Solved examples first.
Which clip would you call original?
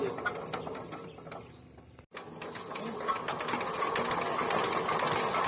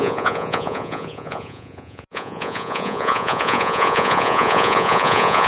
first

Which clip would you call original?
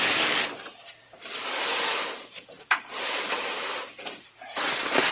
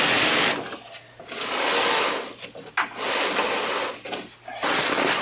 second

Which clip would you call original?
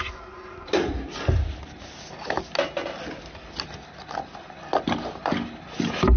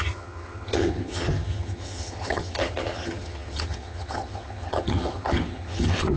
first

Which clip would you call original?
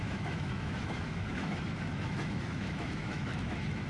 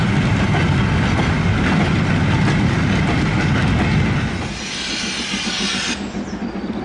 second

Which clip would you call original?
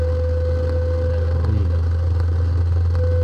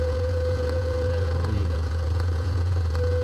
first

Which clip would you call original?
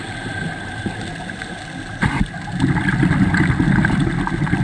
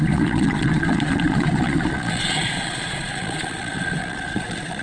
first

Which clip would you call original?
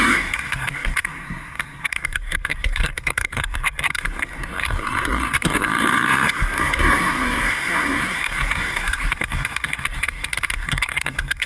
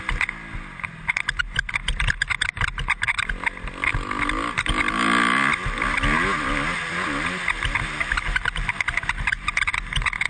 second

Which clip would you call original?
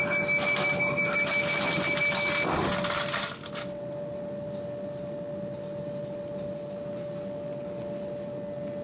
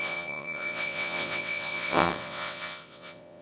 first